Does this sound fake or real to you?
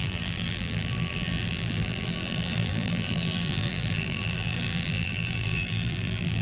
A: fake